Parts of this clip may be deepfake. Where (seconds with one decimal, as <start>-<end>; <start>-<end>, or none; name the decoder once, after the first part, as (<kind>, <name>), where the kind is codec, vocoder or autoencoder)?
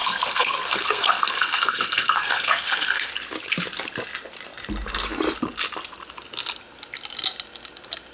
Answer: 0.0-3.1 (codec, SNAC)